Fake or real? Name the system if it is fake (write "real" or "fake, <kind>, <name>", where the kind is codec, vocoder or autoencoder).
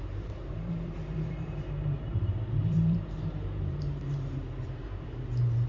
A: fake, vocoder, BigVGAN v2